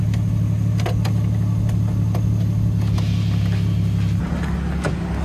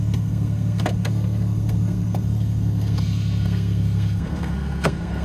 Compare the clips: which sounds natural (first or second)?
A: first